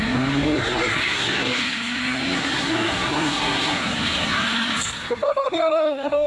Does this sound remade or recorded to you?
remade